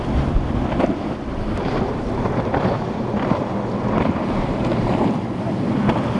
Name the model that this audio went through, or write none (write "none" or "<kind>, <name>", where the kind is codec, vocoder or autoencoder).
vocoder, BigVGAN v2